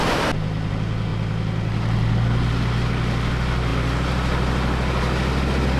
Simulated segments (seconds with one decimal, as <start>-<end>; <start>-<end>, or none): none